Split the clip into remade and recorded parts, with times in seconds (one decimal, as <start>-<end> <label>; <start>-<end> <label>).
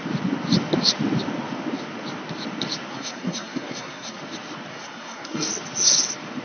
0.0-2.9 recorded; 2.9-4.2 remade; 4.2-4.7 recorded; 4.7-5.5 remade; 5.5-6.4 recorded